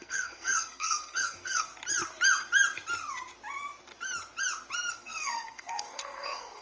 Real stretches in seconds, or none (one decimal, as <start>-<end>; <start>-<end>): 1.7-4.9